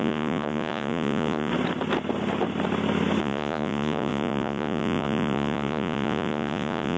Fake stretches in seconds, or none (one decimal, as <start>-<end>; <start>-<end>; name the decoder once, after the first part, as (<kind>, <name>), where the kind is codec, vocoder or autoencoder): 0.0-1.5 (vocoder, Vocos); 3.2-7.0